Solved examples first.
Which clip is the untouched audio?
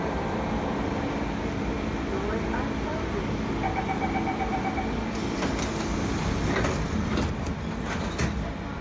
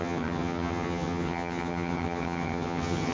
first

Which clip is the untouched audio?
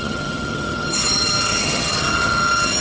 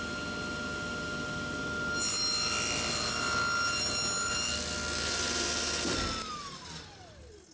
second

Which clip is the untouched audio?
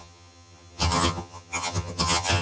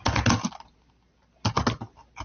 second